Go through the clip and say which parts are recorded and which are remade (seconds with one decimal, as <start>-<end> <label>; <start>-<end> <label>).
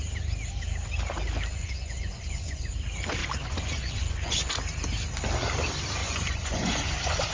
0.0-1.5 recorded; 1.5-2.7 remade; 2.7-3.2 recorded; 3.2-4.5 remade; 4.5-6.0 recorded; 6.0-7.3 remade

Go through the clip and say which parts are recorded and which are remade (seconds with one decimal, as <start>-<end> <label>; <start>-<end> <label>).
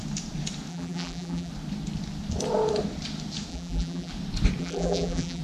0.0-0.7 recorded; 0.7-1.5 remade; 1.5-3.5 recorded; 3.5-4.1 remade; 4.1-4.6 recorded; 4.6-5.4 remade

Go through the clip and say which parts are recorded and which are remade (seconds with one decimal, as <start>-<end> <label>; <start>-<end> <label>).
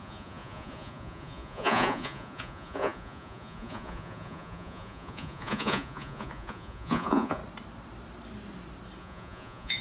0.0-7.4 remade; 7.4-9.0 recorded; 9.0-9.8 remade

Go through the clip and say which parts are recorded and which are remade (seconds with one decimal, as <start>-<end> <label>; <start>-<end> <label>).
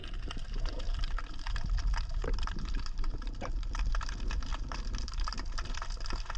0.0-3.8 remade; 3.8-4.5 recorded; 4.5-5.7 remade; 5.7-6.4 recorded